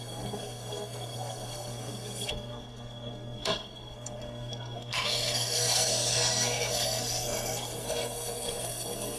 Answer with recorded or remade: remade